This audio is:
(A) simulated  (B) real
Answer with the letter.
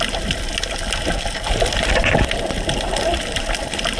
B